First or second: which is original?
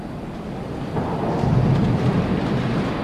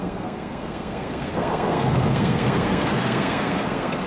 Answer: first